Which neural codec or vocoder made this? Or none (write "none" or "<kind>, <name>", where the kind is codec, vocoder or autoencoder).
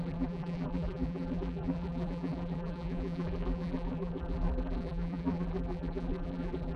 vocoder, BigVGAN v2